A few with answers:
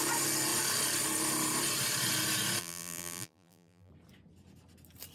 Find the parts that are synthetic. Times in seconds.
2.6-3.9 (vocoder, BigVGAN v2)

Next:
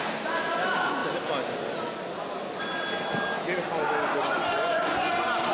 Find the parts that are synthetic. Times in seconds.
4.2-5.1 (vocoder, Vocos)

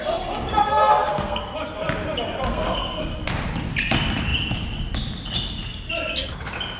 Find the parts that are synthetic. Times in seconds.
0.5-1.4 (codec, SNAC); 2.5-3.1

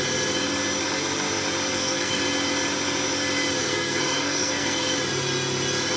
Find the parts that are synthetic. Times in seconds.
1.7-2.2 (codec, SNAC); 3.6-4.9

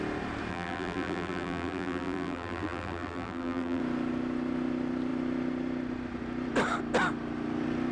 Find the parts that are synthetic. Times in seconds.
0.5-3.8 (vocoder, BigVGAN v2)

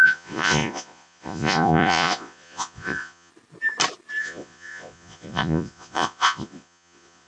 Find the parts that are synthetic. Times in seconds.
0.0-3.3 (vocoder, Vocos); 4.2-7.3